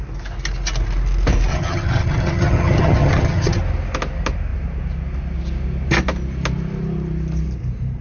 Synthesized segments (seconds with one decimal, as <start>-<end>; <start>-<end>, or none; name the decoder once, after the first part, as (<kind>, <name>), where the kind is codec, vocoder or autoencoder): 1.5-3.6 (vocoder, HiFi-GAN)